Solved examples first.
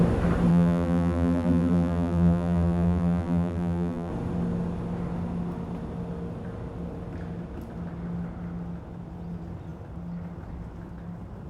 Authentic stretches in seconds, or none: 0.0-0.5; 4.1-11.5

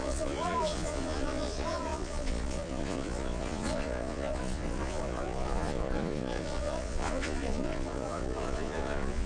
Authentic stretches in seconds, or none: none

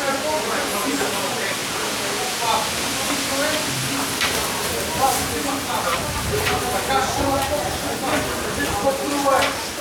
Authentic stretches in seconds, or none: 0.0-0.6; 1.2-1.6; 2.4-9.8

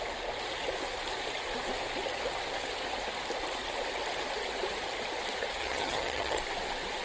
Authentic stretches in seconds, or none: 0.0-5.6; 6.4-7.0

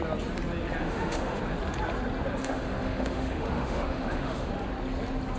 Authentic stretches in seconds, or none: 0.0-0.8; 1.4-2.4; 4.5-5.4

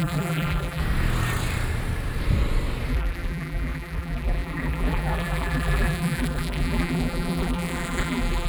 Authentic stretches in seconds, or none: 0.8-2.9

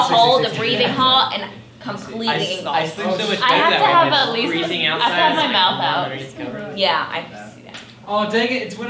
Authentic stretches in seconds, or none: 0.0-8.9